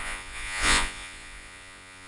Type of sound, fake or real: fake